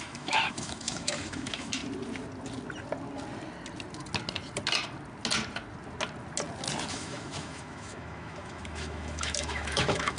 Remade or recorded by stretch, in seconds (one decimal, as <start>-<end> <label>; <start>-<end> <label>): 0.0-1.8 remade; 1.8-6.9 recorded; 6.9-10.2 remade